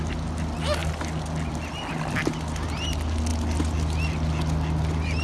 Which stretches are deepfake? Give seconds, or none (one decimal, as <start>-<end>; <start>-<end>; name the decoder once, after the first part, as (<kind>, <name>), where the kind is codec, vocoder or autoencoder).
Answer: none